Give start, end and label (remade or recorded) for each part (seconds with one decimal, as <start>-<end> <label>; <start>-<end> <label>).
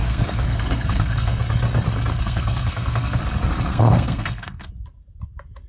0.0-1.4 remade; 1.4-2.1 recorded; 2.1-3.2 remade; 3.2-3.7 recorded; 3.7-4.7 remade; 4.7-5.7 recorded